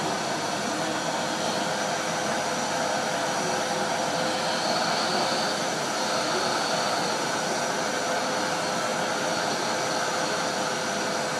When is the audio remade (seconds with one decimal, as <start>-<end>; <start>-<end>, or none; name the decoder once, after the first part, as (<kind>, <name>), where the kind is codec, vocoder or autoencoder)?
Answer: none